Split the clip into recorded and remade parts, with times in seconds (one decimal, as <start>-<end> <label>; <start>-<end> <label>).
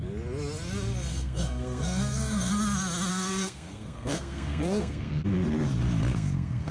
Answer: 0.0-1.1 recorded; 1.1-2.5 remade; 2.5-3.1 recorded; 3.1-5.1 remade; 5.1-6.1 recorded; 6.1-6.7 remade